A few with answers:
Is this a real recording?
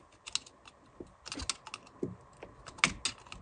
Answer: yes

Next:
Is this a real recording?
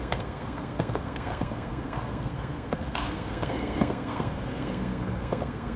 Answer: no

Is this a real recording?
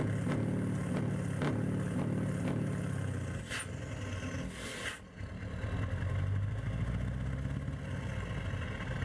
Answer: yes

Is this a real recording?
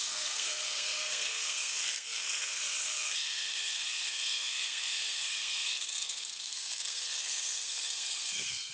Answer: no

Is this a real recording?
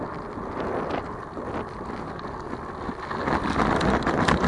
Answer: yes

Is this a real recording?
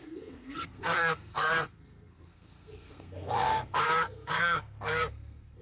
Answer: no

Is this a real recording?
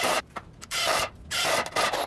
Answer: yes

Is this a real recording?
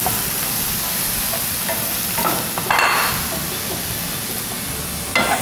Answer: yes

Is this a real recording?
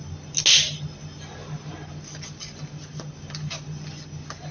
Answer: yes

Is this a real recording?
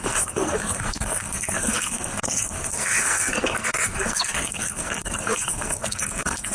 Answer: no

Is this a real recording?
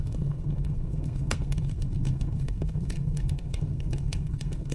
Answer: no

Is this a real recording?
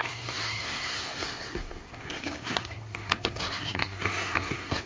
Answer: no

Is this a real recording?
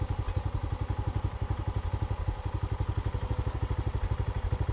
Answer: yes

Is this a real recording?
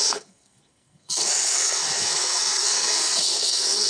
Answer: no